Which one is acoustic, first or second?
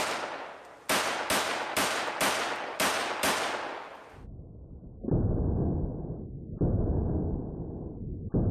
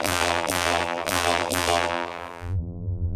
first